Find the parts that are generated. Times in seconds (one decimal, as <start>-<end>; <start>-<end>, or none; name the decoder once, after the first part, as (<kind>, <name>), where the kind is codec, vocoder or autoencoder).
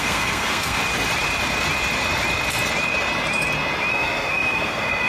0.0-0.8 (codec, SNAC); 3.9-5.1